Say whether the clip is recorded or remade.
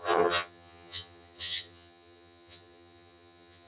remade